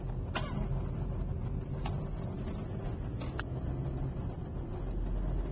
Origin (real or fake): real